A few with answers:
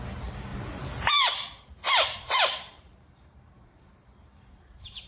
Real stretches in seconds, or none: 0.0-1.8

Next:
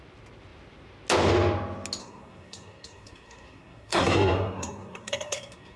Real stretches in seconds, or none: 0.0-2.0

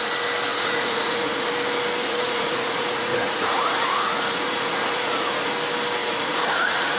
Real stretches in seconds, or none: 0.0-0.5; 1.5-2.0; 5.5-6.0